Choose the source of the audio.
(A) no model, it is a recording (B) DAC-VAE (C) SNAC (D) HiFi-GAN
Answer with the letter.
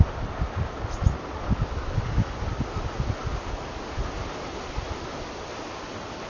A